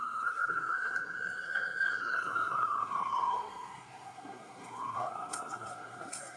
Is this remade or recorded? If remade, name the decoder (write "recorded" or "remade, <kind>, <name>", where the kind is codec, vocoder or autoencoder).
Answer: remade, codec, SNAC